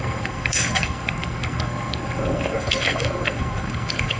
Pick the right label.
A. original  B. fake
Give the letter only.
B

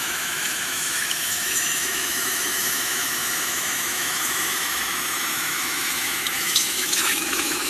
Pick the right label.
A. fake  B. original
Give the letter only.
A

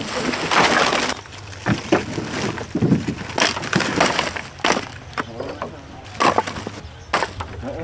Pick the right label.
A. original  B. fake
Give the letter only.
A